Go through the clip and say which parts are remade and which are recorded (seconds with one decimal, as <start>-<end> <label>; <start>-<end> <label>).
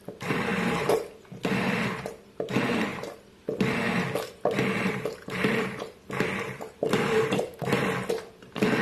0.0-8.8 remade